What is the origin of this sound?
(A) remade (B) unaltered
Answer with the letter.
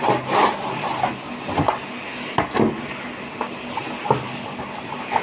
B